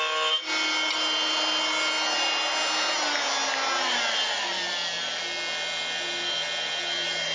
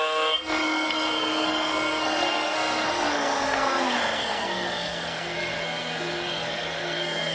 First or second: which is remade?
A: second